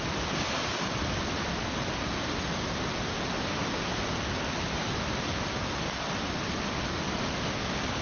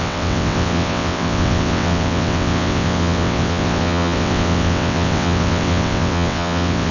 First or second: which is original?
first